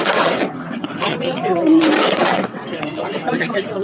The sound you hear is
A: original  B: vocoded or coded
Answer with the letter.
B